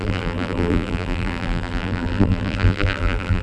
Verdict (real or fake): fake